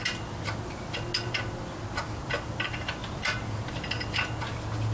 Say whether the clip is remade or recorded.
recorded